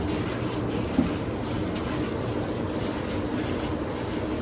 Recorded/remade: recorded